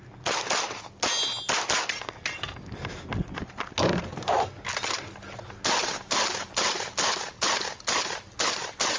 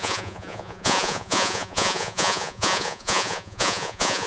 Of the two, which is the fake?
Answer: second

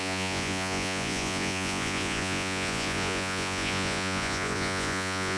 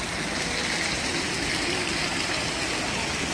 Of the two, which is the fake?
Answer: first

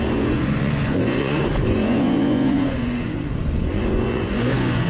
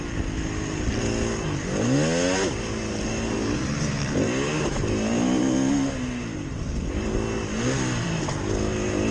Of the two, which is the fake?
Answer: first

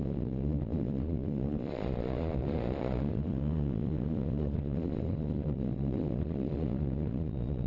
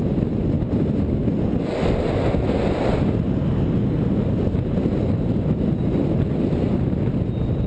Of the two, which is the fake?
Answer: first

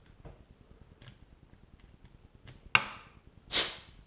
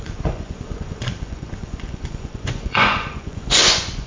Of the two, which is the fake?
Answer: second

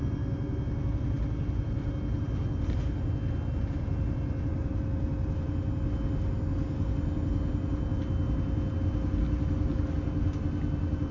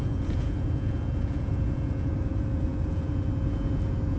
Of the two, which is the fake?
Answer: second